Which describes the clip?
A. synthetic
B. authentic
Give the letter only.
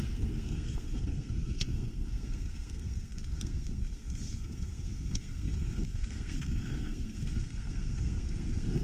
A